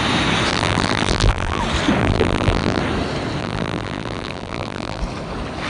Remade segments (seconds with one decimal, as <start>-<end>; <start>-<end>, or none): 0.5-1.6; 2.0-2.8; 3.4-5.0